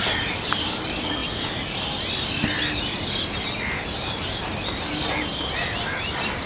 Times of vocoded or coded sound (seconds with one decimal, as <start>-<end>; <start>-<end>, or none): 0.0-1.2; 5.1-6.5